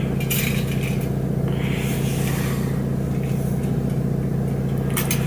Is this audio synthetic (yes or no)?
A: no